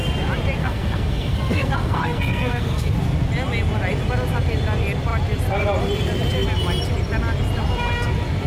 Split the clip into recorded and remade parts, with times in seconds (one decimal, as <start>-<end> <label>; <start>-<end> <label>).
0.0-0.6 recorded; 0.6-2.9 remade; 2.9-8.5 recorded